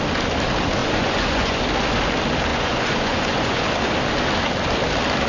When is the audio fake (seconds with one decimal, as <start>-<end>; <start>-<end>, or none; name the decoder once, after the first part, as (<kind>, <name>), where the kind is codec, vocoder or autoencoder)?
0.8-1.6 (vocoder, Vocos); 2.5-3.7